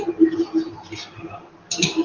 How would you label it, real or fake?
real